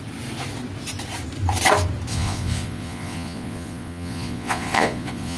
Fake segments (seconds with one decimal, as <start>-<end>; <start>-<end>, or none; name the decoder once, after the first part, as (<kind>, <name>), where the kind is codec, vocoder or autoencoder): 2.1-5.4 (vocoder, Vocos)